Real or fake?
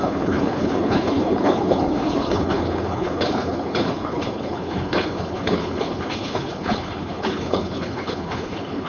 fake